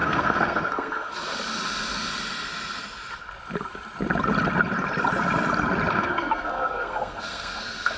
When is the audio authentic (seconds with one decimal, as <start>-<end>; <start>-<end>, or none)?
1.1-5.9